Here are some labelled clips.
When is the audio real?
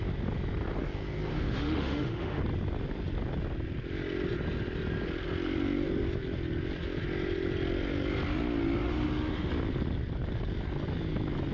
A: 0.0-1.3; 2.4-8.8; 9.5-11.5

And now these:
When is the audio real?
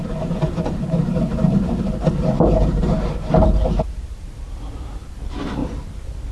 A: 5.6-6.3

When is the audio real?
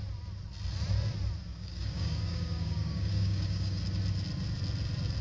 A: 0.0-1.5; 3.8-5.2